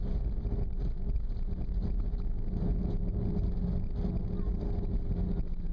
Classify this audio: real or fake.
real